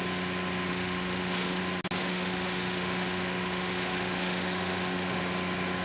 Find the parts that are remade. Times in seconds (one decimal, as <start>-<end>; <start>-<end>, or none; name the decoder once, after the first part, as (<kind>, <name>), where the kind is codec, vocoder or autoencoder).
0.7-1.6 (autoencoder, DAC-VAE); 2.0-5.2

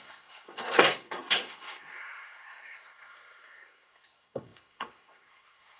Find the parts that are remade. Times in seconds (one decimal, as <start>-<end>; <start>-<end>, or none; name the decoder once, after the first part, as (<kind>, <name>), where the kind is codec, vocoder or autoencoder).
0.0-5.8 (codec, SNAC)